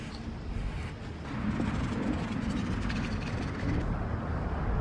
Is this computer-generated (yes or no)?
no